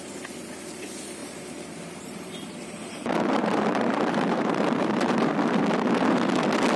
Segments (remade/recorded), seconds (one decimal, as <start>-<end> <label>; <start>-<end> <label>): 0.0-1.2 recorded; 1.2-5.3 remade; 5.3-6.8 recorded